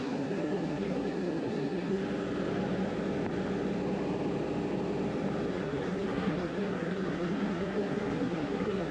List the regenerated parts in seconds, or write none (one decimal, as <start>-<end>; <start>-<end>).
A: 0.0-2.0; 5.5-8.9